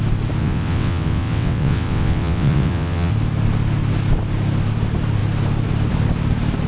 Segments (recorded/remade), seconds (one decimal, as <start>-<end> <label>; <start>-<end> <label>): 0.0-0.4 recorded; 0.4-3.1 remade; 3.1-6.7 recorded